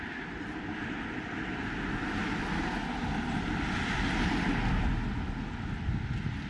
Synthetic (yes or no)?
no